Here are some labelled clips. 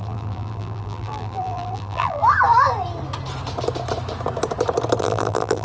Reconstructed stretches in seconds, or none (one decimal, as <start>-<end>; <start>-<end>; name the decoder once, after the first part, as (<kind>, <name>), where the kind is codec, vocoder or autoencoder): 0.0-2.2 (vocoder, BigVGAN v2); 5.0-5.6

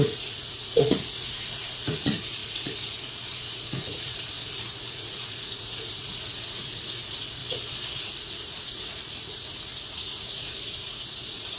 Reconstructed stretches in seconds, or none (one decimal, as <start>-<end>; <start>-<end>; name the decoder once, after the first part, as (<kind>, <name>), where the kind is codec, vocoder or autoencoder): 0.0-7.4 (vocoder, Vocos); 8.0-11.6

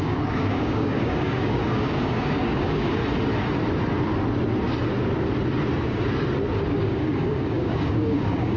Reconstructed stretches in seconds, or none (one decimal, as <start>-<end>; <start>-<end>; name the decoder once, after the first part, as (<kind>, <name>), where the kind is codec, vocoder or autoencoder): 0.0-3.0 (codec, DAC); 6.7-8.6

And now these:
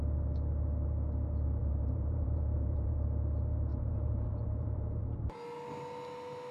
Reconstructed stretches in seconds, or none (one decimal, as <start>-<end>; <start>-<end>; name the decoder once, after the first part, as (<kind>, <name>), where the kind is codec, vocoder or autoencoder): 1.6-2.9 (vocoder, BigVGAN v2); 3.7-5.0

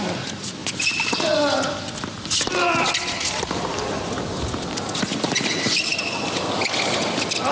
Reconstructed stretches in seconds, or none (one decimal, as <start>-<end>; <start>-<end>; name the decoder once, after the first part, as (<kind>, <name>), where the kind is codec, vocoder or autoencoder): none

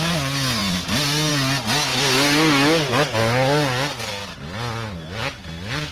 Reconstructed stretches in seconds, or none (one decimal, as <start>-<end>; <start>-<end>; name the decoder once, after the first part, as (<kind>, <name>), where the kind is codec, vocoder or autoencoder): none